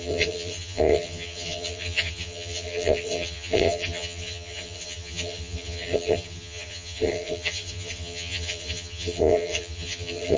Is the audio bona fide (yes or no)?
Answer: no